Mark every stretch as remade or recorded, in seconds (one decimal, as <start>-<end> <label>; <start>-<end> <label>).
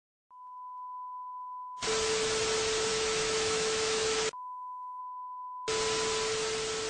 0.0-2.9 recorded; 2.9-5.0 remade; 5.0-6.9 recorded